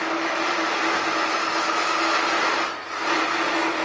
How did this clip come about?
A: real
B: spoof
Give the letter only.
A